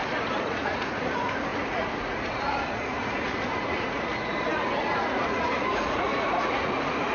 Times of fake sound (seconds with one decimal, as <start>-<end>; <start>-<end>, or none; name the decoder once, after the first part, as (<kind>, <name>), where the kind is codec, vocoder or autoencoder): 0.0-7.1 (vocoder, Vocos)